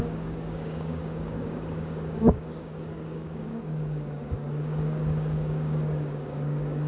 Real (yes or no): no